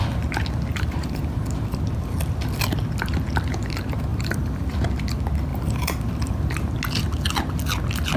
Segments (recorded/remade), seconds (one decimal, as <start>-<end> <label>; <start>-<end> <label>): 0.0-0.7 recorded; 0.7-1.2 remade; 1.2-4.1 recorded; 4.1-4.7 remade; 4.7-5.5 recorded; 5.5-6.5 remade; 6.5-8.2 recorded